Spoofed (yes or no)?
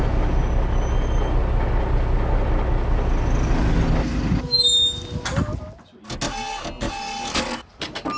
no